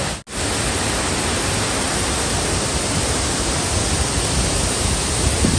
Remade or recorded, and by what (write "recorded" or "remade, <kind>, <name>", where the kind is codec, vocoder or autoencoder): recorded